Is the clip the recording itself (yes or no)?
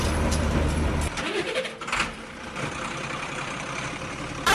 no